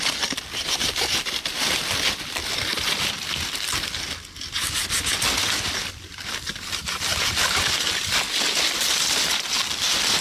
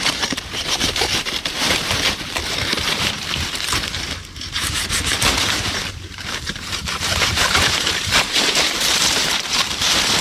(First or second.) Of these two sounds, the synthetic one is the second